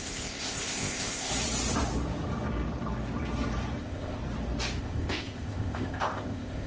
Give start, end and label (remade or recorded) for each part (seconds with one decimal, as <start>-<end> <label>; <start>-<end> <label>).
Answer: 0.0-1.3 remade; 1.3-3.8 recorded; 3.8-4.2 remade; 4.2-4.8 recorded; 4.8-6.7 remade